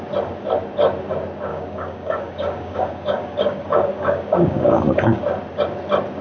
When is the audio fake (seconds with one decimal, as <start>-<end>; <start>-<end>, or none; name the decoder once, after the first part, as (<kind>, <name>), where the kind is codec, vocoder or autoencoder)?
1.5-5.2 (codec, DAC)

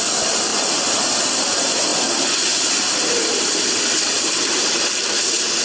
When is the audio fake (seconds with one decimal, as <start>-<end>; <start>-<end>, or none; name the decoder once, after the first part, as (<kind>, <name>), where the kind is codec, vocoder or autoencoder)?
none

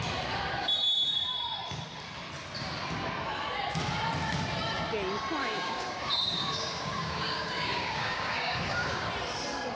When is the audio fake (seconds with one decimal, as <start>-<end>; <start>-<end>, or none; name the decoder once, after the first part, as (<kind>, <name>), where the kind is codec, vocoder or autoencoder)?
5.4-9.1 (codec, DAC)

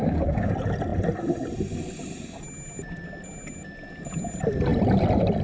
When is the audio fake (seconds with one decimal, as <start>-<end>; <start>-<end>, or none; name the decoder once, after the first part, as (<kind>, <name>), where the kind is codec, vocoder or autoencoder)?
0.0-0.5 (codec, DAC)

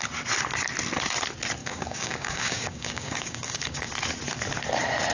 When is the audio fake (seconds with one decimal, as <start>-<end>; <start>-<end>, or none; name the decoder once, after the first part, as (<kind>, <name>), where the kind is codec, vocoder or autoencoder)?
1.6-3.9 (codec, DAC)

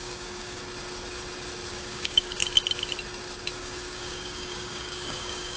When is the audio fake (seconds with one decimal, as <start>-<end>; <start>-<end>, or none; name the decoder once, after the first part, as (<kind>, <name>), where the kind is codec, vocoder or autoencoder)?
0.0-0.6 (codec, DAC); 1.7-2.4; 3.4-5.6

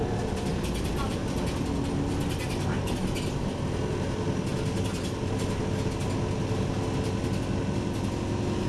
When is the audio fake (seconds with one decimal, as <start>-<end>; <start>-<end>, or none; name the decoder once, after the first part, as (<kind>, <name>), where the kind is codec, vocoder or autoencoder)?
none